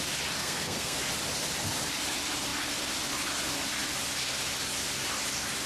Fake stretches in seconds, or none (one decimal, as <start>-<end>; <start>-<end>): 0.4-1.0